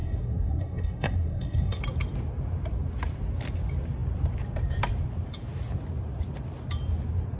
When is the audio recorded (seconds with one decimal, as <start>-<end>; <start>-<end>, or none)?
1.8-7.4